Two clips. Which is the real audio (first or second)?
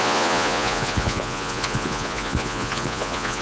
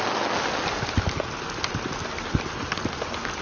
second